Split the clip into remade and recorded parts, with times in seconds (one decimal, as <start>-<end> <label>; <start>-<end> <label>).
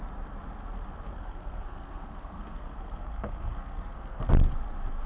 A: 0.0-1.1 recorded; 1.1-4.2 remade; 4.2-5.1 recorded